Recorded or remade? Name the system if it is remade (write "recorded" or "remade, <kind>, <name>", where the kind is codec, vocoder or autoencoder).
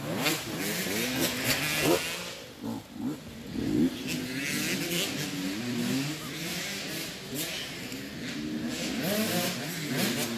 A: recorded